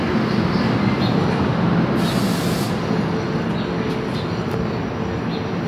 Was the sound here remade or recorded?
recorded